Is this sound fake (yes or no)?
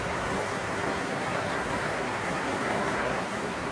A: yes